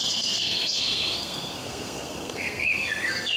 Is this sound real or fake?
fake